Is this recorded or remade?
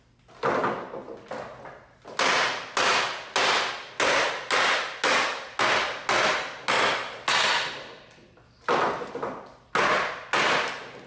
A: recorded